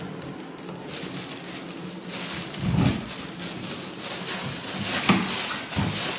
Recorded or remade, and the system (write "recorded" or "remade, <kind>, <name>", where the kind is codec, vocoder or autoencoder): recorded